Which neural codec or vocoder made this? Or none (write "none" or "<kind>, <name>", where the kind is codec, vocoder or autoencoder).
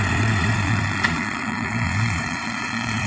vocoder, Vocos